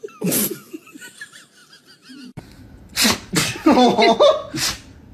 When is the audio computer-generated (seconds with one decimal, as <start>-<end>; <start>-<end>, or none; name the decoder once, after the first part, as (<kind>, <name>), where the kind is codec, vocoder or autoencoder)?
1.6-3.3 (vocoder, BigVGAN v2)